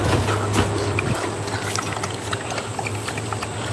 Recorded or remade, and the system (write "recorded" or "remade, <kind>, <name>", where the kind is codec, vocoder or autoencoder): recorded